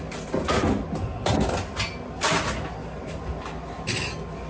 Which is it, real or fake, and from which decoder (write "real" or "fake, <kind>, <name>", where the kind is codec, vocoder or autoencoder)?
real